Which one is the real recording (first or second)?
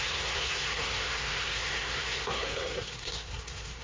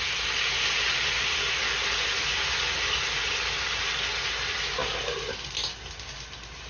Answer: second